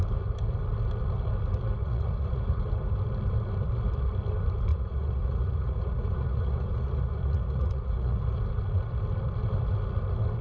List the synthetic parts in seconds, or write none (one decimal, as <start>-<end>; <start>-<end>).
1.8-2.6; 4.7-8.3